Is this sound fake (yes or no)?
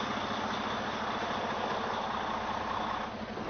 no